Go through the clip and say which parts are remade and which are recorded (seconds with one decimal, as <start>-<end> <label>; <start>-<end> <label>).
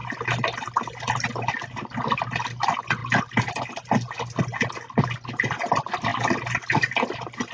0.0-7.5 recorded